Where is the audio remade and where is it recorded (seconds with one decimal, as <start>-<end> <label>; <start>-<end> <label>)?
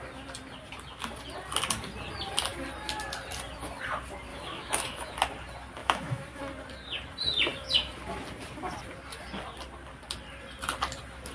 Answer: 0.0-4.3 recorded; 4.3-5.1 remade; 5.1-5.8 recorded; 5.8-6.4 remade; 6.4-11.3 recorded